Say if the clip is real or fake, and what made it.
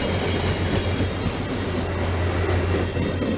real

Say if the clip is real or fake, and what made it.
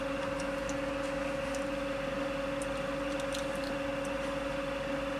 real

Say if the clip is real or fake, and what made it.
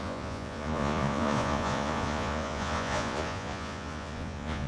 fake, vocoder, Vocos